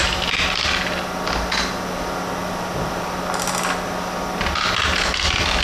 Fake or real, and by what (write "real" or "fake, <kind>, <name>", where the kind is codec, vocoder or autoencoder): real